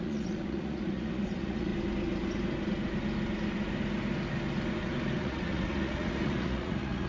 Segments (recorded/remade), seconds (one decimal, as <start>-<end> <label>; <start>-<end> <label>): 0.0-1.7 remade; 1.7-5.2 recorded; 5.2-7.1 remade